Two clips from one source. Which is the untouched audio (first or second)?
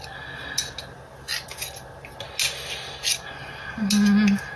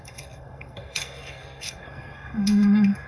first